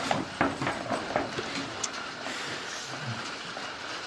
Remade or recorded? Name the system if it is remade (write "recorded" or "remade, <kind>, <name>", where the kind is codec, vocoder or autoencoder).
recorded